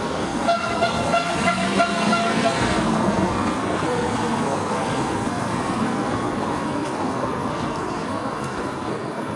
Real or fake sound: fake